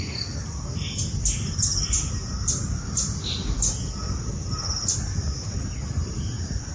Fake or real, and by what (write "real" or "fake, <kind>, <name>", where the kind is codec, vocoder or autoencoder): real